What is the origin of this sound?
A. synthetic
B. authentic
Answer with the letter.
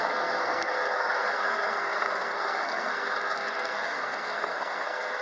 A